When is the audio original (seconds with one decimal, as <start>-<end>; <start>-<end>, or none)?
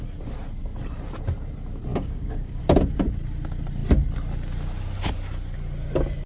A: 0.0-1.9; 2.6-6.3